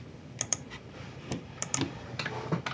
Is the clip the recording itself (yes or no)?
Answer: yes